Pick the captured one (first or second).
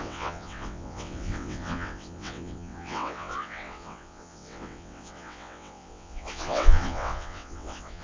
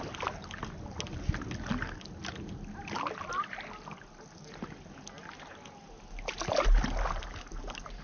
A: second